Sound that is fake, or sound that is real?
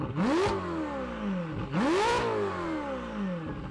real